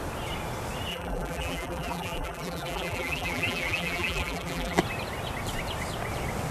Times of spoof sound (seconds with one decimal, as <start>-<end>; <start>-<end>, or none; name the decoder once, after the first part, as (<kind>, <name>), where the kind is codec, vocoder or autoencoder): 0.9-4.8 (vocoder, BigVGAN v2)